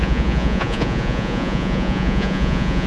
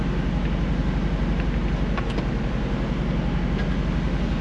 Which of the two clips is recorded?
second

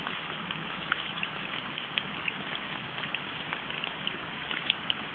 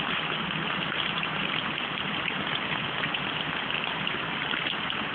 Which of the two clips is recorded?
second